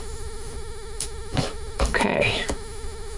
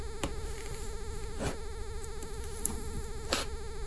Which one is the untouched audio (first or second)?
second